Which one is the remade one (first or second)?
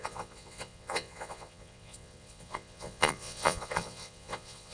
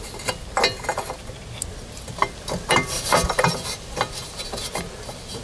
first